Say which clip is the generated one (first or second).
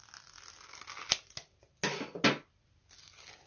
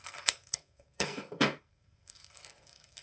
second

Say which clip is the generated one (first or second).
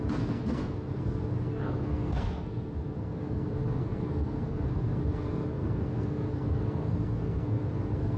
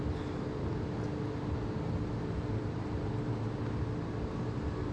first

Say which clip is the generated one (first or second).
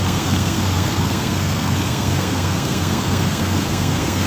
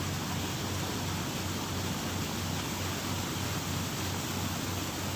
first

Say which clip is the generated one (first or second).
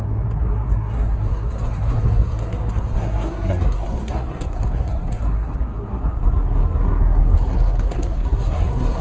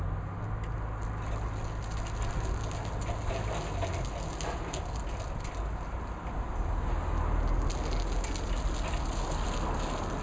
first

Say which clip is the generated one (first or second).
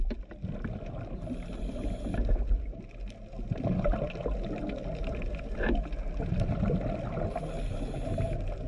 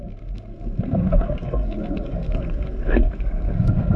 second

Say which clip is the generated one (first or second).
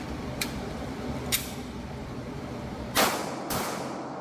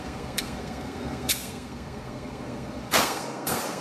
second